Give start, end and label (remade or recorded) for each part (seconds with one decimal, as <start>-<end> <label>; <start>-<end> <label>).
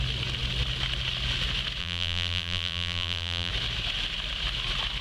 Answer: 0.0-1.8 recorded; 1.8-3.5 remade; 3.5-5.0 recorded